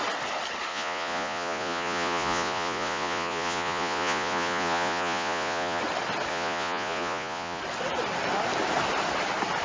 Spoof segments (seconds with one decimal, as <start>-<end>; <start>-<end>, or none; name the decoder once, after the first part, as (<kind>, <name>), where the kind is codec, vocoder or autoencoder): 0.7-5.8 (vocoder, Vocos); 6.3-7.6